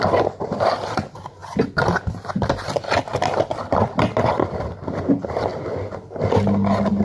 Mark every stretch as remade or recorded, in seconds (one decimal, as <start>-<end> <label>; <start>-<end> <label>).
0.0-7.0 recorded